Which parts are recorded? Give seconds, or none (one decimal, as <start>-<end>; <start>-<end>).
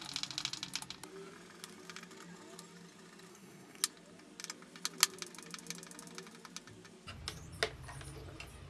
0.0-3.3; 3.8-8.7